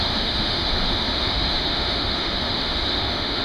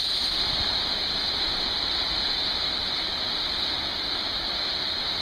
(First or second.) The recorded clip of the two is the second